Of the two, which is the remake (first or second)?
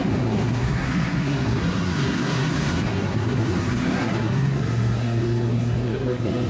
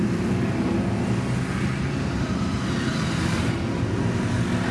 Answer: first